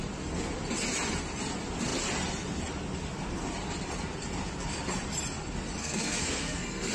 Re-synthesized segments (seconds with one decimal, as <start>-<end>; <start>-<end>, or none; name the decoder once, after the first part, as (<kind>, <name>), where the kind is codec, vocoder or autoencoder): 5.8-6.9 (codec, SNAC)